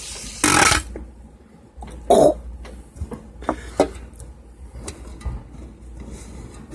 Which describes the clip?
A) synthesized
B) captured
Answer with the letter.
B